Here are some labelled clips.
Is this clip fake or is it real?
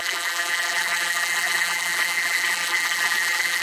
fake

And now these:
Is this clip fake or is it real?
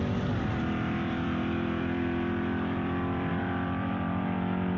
fake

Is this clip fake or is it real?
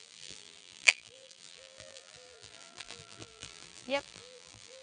fake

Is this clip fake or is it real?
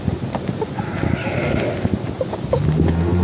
real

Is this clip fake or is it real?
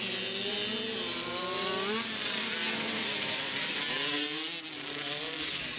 real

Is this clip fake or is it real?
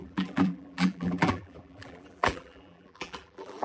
fake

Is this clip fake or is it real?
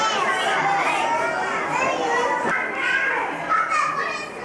real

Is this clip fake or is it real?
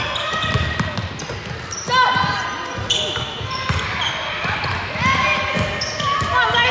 real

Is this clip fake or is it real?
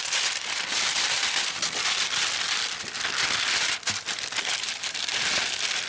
fake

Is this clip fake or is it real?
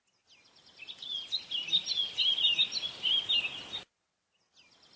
real